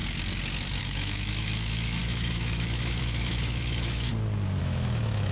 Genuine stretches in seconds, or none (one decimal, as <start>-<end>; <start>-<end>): 0.0-0.8; 4.1-4.6